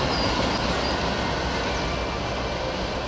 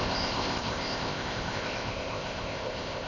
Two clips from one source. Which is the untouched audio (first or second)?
first